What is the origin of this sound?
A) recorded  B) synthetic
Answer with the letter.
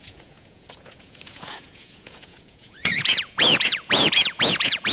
B